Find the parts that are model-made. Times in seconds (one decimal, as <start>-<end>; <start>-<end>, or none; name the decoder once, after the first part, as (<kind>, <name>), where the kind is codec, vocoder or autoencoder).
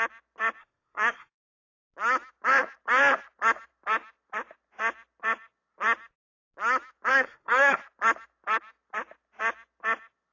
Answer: 0.6-1.4 (codec, SNAC); 7.1-7.8